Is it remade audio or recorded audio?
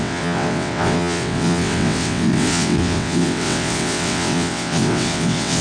remade